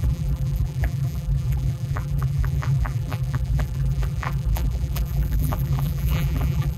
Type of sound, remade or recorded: remade